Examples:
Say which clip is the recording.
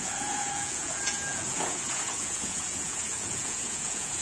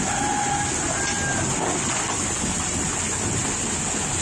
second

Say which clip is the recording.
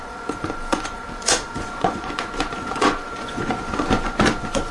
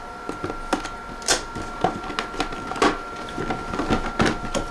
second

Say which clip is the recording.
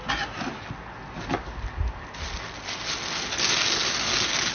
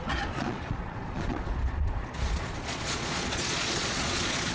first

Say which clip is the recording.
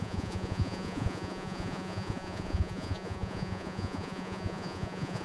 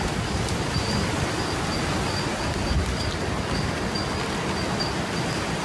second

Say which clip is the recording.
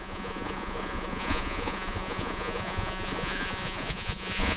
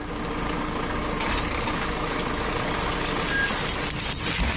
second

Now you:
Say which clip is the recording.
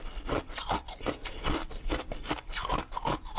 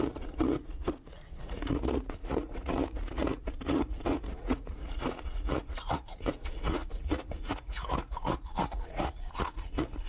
first